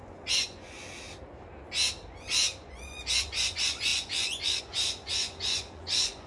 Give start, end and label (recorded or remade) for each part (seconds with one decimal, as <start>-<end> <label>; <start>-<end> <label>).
0.0-0.8 remade; 0.8-2.1 recorded; 2.1-6.3 remade